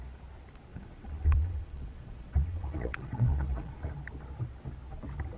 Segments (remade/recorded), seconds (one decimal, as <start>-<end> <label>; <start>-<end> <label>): 0.0-0.7 recorded; 0.7-3.9 remade; 3.9-5.4 recorded